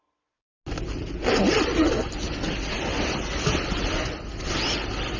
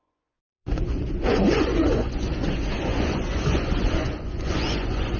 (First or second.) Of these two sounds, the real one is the first